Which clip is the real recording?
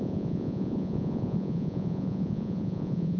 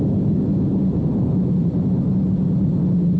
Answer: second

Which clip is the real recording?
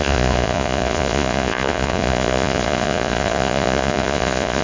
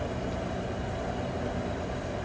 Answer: second